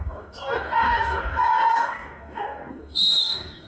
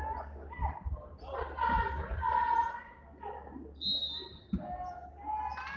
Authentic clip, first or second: second